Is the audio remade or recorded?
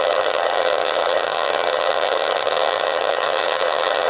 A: remade